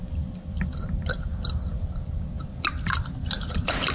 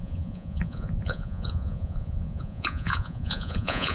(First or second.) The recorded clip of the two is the first